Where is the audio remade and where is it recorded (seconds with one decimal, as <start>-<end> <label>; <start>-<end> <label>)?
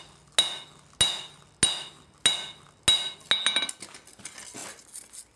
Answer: 0.0-5.4 recorded